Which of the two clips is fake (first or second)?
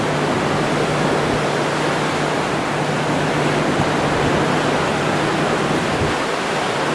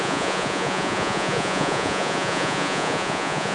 second